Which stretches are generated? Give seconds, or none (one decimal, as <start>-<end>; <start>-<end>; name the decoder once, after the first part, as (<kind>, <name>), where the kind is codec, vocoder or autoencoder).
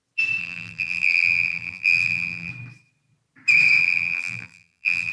0.4-2.5 (vocoder, BigVGAN v2); 3.8-5.1